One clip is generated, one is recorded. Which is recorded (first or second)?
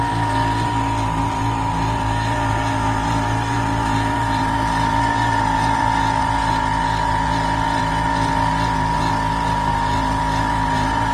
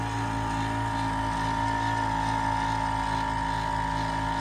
second